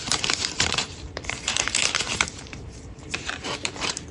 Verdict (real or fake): fake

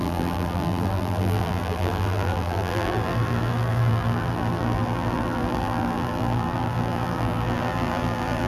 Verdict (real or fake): fake